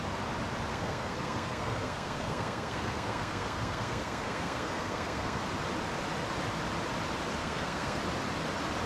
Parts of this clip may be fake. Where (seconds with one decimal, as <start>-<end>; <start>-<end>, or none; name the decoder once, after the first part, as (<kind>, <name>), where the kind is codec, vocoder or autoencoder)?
0.7-5.4 (codec, SNAC); 7.4-8.0